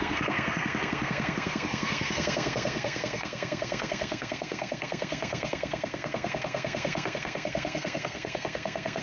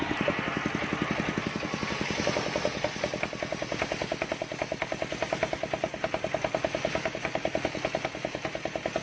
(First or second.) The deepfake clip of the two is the first